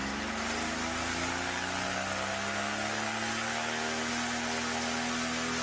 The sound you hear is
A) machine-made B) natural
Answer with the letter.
B